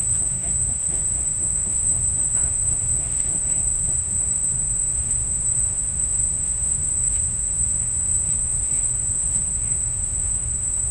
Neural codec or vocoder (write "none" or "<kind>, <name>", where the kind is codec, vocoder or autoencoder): autoencoder, DAC-VAE